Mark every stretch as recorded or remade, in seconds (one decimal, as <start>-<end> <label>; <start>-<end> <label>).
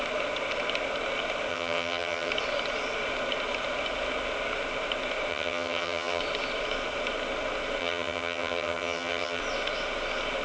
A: 0.0-1.5 recorded; 1.5-2.3 remade; 2.3-5.3 recorded; 5.3-6.2 remade; 6.2-7.8 recorded; 7.8-9.4 remade; 9.4-10.4 recorded